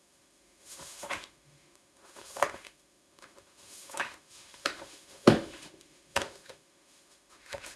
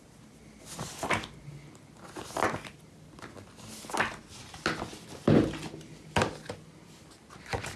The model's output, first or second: first